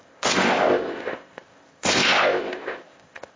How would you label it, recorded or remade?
remade